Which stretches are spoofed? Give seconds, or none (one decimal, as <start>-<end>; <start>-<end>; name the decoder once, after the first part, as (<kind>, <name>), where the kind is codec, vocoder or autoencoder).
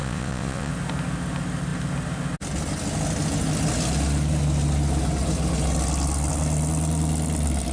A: 0.0-0.7 (vocoder, Vocos)